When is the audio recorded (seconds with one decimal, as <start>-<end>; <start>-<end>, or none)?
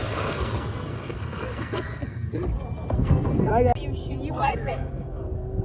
2.3-2.9; 3.5-4.3